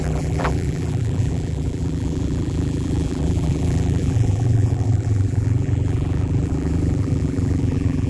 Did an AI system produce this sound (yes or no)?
yes